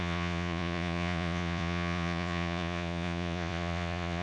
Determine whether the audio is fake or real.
fake